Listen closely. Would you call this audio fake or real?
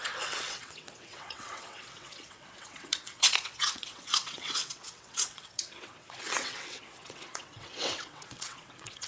fake